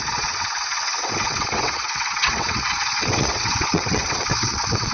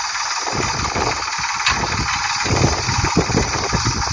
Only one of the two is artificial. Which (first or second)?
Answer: first